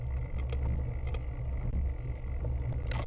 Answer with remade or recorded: recorded